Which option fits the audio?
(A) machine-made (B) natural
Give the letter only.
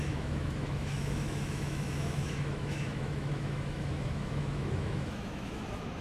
A